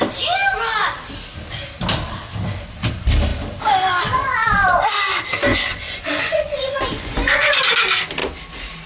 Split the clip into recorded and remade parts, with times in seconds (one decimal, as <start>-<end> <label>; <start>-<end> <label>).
0.0-5.5 recorded; 5.5-7.6 remade; 7.6-8.9 recorded